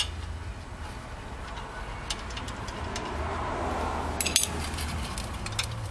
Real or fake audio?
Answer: real